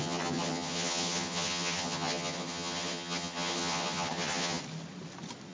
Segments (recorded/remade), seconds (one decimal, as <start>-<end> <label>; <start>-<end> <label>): 0.0-4.6 remade; 4.6-5.5 recorded